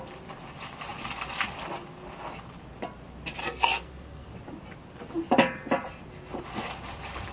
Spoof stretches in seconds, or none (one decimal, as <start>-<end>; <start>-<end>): 3.4-4.3